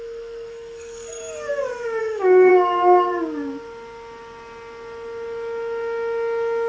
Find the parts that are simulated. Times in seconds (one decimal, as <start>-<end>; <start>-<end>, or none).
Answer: 0.0-1.2; 2.0-2.5